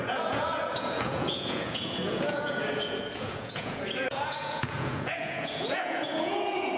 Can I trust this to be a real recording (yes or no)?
no